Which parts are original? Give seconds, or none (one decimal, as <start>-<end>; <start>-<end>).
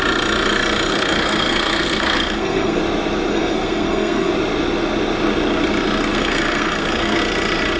0.0-0.9; 2.8-3.3; 4.3-6.1; 7.2-7.8